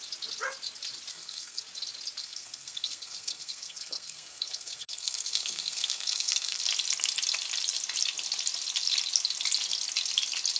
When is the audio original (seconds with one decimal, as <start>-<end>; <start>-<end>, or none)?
0.0-1.1; 1.6-2.2; 6.6-10.6